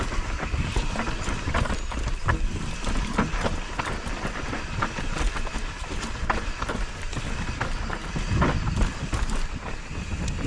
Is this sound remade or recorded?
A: recorded